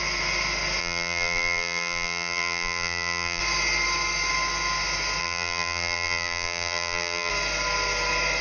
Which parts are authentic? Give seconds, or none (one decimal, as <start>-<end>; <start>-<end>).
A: 0.0-0.8; 3.4-5.2; 7.3-8.4

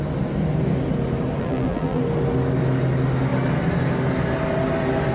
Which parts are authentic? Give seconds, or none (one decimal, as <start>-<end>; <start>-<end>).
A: 0.0-1.4; 2.0-5.1